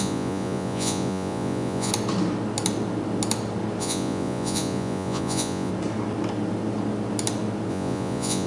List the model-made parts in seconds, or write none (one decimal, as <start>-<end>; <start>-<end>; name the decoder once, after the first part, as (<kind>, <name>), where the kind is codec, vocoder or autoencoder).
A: 0.0-1.9 (vocoder, Vocos); 3.8-5.7; 7.7-8.5